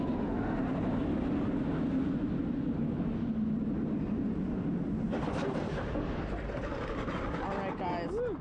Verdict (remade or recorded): recorded